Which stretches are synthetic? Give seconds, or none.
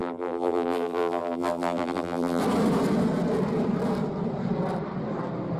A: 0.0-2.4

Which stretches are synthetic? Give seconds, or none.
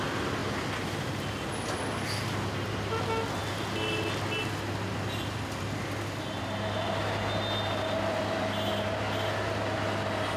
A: none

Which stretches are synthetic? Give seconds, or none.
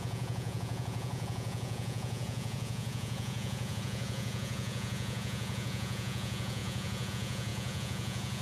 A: 0.0-8.4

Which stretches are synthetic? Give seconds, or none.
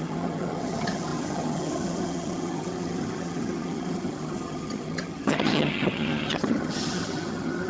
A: 0.0-7.7